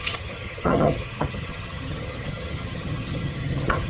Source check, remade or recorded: remade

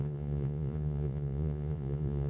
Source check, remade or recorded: remade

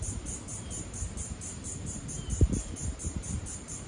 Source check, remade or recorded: remade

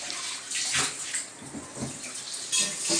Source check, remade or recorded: recorded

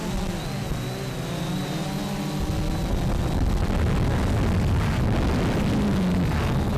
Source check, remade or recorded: recorded